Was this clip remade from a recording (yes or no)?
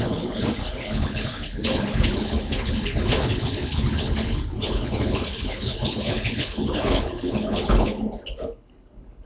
yes